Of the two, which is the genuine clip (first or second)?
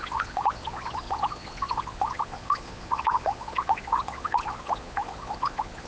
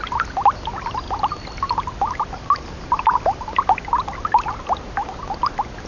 second